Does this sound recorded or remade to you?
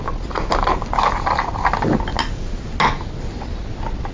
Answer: recorded